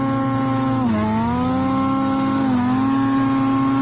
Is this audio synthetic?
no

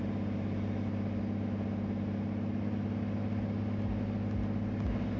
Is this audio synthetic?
no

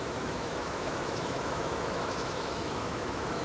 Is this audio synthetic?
yes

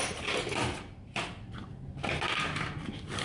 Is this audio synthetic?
no